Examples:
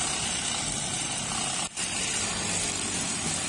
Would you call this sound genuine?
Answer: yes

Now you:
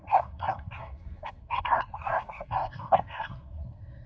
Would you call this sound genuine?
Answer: no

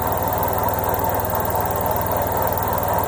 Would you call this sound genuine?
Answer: yes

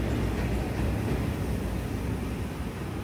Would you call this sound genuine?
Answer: yes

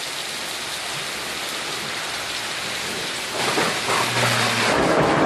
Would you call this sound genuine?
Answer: yes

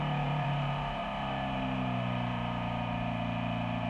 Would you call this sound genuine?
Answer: no